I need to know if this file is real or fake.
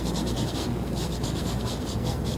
fake